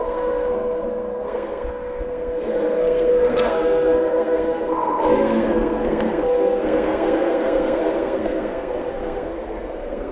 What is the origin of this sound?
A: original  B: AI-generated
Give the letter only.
B